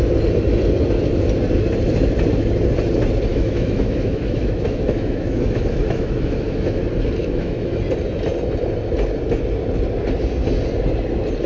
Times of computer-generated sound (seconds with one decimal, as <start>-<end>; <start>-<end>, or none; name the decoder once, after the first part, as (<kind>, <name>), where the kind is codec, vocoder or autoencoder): 3.3-6.8 (autoencoder, DAC-VAE); 7.2-7.8